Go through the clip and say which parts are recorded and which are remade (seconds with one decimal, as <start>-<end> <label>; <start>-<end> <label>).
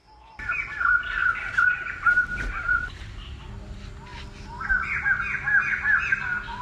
0.0-0.6 remade; 0.6-1.2 recorded; 1.2-3.0 remade; 3.0-6.6 recorded